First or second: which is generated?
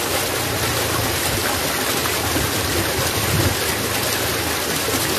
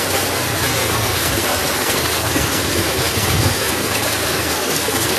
second